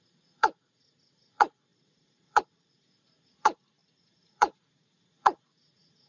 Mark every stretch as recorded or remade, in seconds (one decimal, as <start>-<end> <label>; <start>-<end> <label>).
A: 0.0-6.1 remade